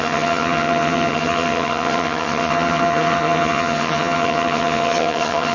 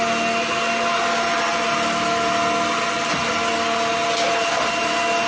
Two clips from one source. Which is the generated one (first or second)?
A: first